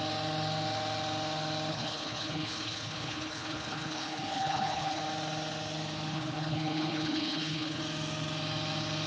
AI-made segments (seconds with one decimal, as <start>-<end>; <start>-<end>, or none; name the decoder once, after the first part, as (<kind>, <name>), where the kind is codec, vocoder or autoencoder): 1.7-5.0 (codec, HILCodec); 6.1-7.8

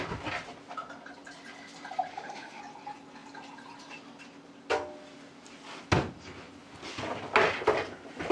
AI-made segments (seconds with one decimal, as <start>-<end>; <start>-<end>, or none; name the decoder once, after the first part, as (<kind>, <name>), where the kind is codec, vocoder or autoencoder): 2.1-2.6 (autoencoder, DAC-VAE)

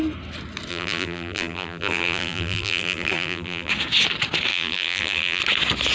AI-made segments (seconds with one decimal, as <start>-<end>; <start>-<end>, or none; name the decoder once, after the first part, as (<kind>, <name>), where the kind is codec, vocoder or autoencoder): 0.7-3.7 (vocoder, BigVGAN v2); 4.5-5.4

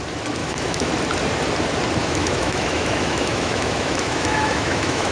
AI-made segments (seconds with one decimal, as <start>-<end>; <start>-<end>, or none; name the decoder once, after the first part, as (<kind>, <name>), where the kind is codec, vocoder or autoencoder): 0.4-0.9 (autoencoder, DAC-VAE); 2.0-5.1

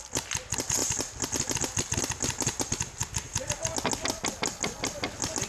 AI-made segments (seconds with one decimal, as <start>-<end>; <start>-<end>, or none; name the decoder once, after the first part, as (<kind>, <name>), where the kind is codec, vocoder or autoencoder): none